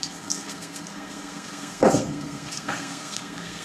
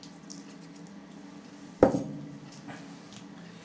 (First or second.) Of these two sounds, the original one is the second